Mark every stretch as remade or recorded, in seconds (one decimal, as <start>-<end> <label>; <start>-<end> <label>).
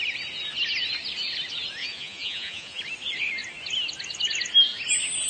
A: 0.0-1.8 recorded; 1.8-2.8 remade; 2.8-5.3 recorded